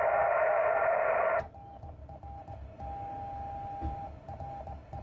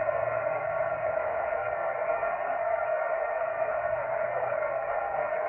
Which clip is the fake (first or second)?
second